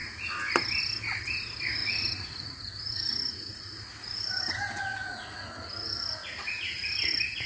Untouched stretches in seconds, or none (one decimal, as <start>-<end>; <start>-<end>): 0.0-1.8; 4.4-5.0; 7.1-7.5